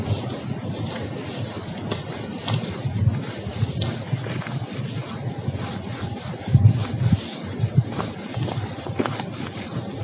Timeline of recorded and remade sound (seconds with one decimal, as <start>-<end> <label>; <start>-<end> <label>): 0.0-10.0 recorded